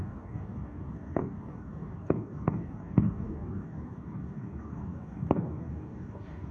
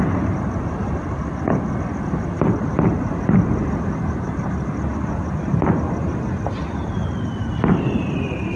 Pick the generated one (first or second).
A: first